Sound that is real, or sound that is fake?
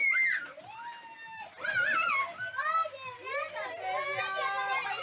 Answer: real